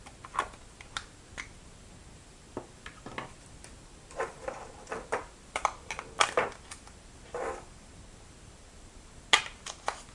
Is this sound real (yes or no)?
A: yes